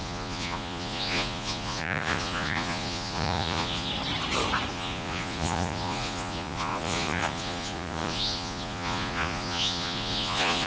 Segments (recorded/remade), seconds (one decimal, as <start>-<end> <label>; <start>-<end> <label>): 0.0-3.9 remade; 3.9-4.7 recorded; 4.7-10.7 remade